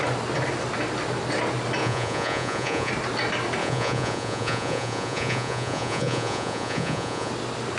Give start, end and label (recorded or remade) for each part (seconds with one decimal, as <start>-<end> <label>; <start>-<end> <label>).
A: 0.0-1.8 recorded; 1.8-2.9 remade; 2.9-3.6 recorded; 3.6-7.3 remade; 7.3-7.8 recorded